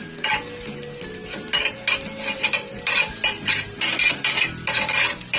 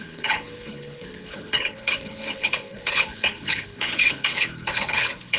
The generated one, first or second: second